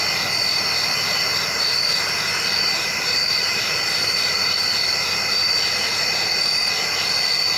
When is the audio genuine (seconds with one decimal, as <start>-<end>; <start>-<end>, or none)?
0.0-1.3; 5.9-7.6